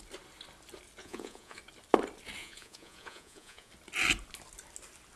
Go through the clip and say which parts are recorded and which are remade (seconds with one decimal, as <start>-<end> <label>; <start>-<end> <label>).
0.0-1.0 recorded; 1.0-1.6 remade; 1.6-2.4 recorded; 2.4-3.7 remade; 3.7-5.2 recorded

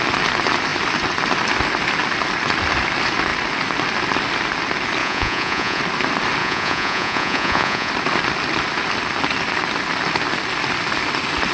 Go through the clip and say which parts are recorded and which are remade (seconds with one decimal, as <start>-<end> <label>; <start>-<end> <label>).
0.0-5.0 recorded; 5.0-5.8 remade; 5.8-6.4 recorded; 6.4-7.9 remade; 7.9-11.5 recorded

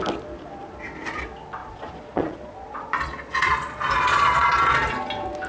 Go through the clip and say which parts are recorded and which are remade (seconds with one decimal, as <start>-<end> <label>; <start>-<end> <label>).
0.0-1.6 recorded; 1.6-4.9 remade; 4.9-5.5 recorded

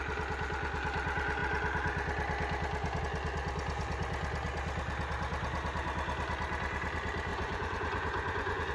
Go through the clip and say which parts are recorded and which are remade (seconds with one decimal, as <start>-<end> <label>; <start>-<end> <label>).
0.0-7.3 recorded; 7.3-8.7 remade